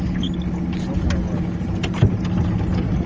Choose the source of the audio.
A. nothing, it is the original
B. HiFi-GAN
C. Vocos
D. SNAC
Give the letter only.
A